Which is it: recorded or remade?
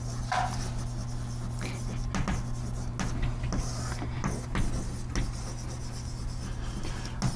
recorded